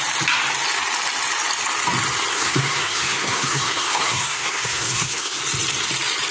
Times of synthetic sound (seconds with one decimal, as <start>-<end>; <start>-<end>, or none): 2.3-5.4